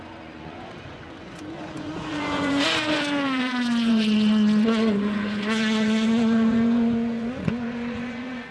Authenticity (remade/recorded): remade